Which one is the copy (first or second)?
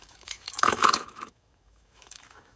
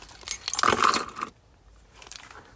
first